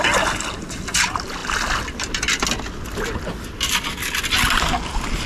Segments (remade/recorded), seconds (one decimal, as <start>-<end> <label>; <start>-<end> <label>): 0.0-5.3 recorded